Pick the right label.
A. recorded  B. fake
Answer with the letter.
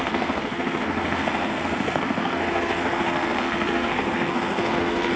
B